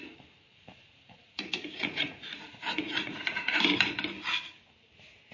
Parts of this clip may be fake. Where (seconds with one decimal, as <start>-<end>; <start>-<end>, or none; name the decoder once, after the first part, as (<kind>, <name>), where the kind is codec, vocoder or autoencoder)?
0.8-3.6 (vocoder, Vocos)

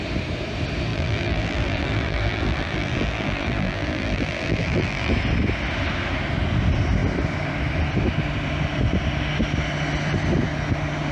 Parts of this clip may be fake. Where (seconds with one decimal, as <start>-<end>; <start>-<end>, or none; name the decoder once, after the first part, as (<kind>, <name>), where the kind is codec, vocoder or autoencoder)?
0.9-5.1 (vocoder, BigVGAN v2)

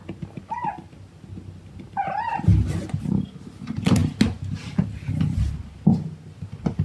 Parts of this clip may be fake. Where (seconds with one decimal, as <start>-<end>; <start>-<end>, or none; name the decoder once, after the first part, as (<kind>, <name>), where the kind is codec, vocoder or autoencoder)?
none

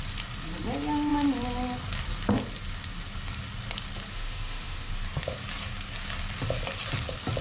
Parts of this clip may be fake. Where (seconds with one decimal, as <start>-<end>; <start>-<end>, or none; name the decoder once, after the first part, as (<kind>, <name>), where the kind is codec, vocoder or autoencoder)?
4.1-4.9 (autoencoder, DAC-VAE)